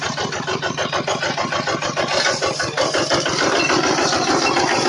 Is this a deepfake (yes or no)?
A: no